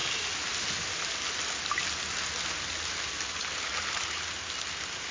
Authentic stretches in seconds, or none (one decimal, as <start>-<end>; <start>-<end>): 0.0-5.1